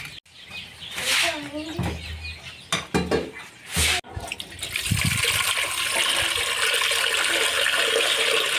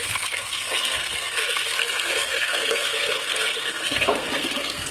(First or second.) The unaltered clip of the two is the first